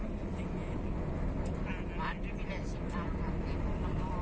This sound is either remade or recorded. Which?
recorded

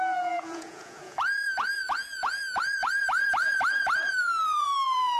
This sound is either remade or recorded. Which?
remade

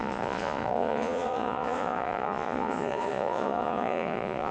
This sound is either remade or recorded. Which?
remade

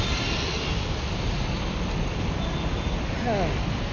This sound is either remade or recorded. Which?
recorded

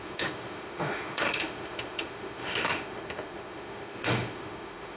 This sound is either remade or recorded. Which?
remade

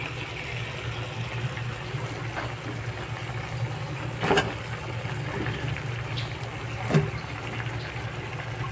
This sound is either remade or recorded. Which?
recorded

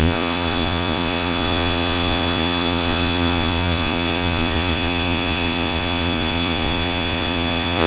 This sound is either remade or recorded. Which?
remade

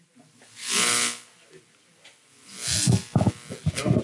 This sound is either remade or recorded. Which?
recorded